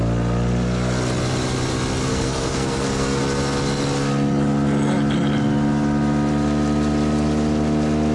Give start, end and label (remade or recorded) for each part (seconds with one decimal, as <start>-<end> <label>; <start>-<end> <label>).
0.0-2.1 recorded; 2.1-3.2 remade; 3.2-8.1 recorded